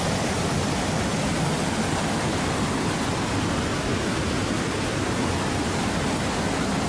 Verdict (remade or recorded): recorded